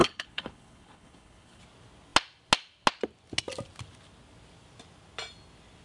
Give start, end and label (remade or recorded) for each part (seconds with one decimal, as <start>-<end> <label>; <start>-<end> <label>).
0.0-1.6 remade; 1.6-5.8 recorded